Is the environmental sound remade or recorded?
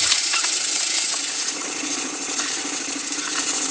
remade